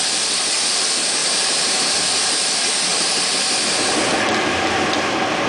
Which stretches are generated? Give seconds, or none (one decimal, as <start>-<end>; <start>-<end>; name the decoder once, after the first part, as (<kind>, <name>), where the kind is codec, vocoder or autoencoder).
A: 1.2-1.7 (vocoder, BigVGAN v2); 2.9-4.1